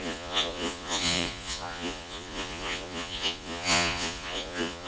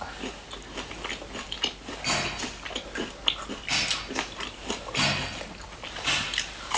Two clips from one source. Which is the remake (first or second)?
first